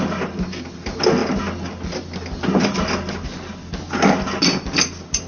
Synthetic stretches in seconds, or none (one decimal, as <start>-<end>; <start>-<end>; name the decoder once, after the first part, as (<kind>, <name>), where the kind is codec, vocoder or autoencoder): none